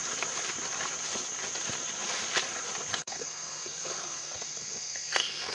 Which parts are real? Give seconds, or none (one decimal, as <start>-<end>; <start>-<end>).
0.0-2.9